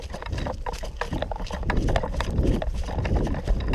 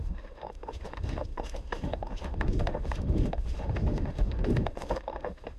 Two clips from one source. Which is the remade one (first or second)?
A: second